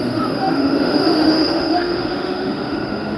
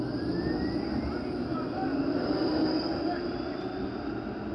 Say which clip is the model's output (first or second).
first